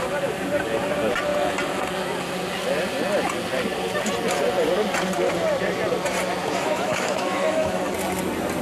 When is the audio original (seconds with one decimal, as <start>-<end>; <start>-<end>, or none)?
0.0-6.4; 7.8-8.6